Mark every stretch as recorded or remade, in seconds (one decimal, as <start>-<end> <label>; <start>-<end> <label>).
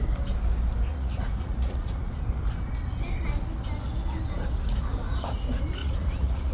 0.0-0.9 recorded; 0.9-2.1 remade; 2.1-5.8 recorded; 5.8-6.5 remade